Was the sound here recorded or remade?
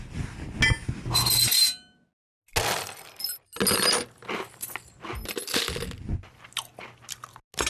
recorded